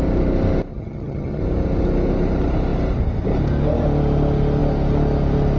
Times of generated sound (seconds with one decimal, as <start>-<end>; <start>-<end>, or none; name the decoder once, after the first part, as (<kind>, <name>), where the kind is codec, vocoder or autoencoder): 0.7-1.4 (vocoder, HiFi-GAN)

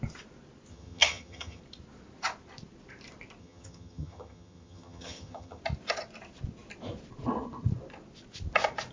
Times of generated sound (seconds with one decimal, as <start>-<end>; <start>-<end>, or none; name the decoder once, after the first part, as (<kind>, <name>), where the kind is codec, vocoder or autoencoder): 0.7-1.6 (vocoder, HiFi-GAN); 3.4-5.6

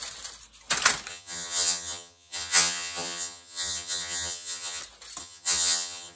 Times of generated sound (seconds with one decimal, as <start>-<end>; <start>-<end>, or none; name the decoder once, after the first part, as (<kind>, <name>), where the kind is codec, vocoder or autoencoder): 1.1-4.8 (vocoder, HiFi-GAN); 5.2-6.2

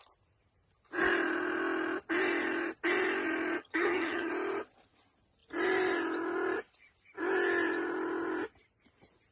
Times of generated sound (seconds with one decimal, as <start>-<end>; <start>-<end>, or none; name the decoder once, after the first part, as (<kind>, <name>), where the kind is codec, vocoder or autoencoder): 3.6-4.3 (vocoder, HiFi-GAN)

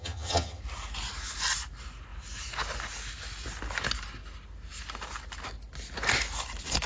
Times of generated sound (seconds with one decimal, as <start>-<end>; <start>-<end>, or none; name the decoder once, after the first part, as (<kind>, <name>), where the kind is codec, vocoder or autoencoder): 0.0-0.6 (vocoder, HiFi-GAN)

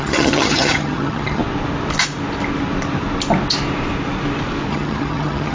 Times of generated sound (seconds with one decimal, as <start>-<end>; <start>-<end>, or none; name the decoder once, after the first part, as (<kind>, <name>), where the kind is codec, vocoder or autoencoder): 0.0-1.4 (vocoder, HiFi-GAN); 4.7-5.5

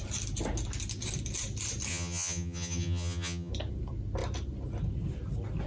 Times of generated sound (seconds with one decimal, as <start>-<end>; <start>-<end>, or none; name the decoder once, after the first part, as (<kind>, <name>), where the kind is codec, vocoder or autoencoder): 1.9-3.5 (vocoder, HiFi-GAN)

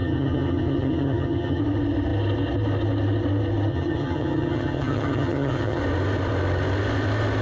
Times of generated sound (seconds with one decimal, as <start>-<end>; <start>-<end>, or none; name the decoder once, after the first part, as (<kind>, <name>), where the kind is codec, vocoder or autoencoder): 0.0-1.6 (vocoder, HiFi-GAN); 3.7-5.8